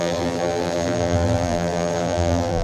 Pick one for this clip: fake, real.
fake